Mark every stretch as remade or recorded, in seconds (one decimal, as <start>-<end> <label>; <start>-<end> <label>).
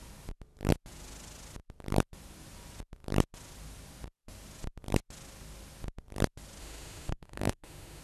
0.0-6.6 recorded; 6.6-8.0 remade